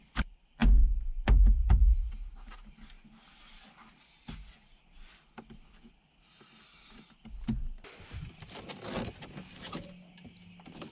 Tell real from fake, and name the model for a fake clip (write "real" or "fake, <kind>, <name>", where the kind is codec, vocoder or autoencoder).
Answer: real